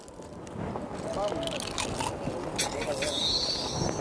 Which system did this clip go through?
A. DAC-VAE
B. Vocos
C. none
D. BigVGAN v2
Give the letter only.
C